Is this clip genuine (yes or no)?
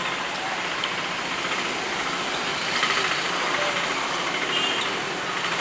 yes